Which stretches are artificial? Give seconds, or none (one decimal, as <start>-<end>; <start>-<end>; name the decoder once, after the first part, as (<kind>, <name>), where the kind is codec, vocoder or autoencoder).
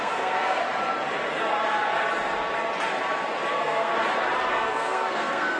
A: 0.0-0.6 (codec, SNAC); 3.5-3.9; 4.5-5.6